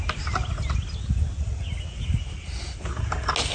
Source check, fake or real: real